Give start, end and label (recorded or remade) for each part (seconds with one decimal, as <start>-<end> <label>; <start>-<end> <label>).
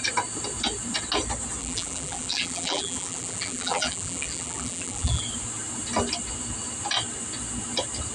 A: 0.0-1.6 recorded; 1.6-5.2 remade; 5.2-8.1 recorded